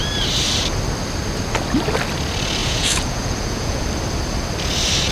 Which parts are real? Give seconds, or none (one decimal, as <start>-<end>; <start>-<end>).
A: 0.0-2.6; 3.8-5.1